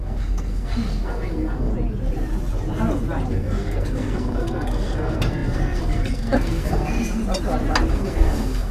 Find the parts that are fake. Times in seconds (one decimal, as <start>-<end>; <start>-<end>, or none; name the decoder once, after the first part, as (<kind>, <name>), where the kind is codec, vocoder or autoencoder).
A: 0.0-1.7 (codec, SNAC); 3.3-7.2; 7.9-8.7